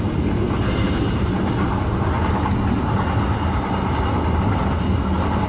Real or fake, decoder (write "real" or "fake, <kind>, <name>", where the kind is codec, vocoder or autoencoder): real